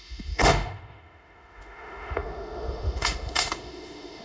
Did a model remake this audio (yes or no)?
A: yes